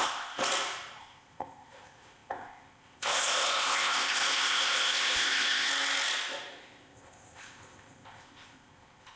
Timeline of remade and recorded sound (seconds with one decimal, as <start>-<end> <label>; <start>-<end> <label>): 0.0-0.4 remade; 0.4-1.0 recorded; 1.0-5.7 remade; 5.7-6.5 recorded; 6.5-9.2 remade